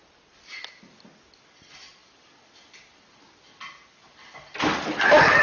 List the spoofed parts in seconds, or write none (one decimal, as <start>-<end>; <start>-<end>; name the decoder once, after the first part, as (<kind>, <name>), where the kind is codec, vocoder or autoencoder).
none